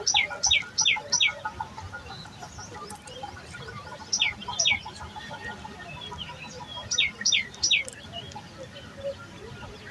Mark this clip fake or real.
real